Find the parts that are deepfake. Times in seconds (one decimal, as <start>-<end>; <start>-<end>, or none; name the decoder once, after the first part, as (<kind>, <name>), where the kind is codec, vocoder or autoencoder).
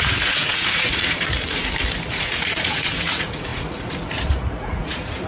0.0-1.6 (vocoder, Vocos); 2.1-5.3